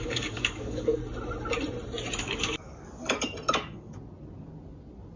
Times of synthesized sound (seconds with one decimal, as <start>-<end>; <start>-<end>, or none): 0.0-1.0; 2.2-3.0